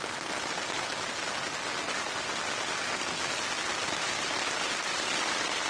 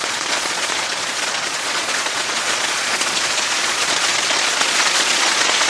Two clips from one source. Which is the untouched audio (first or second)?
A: first